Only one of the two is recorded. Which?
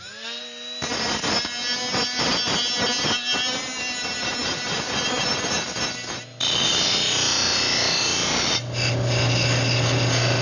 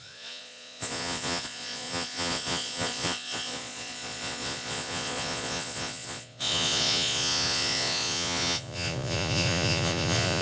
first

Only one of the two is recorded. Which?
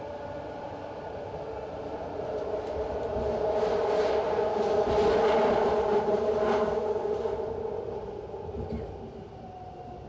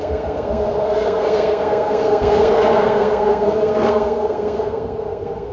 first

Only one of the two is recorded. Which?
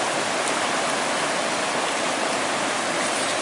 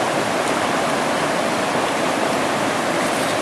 first